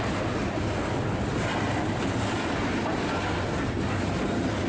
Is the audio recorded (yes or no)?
yes